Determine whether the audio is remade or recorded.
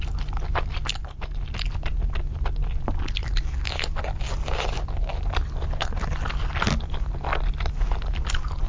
recorded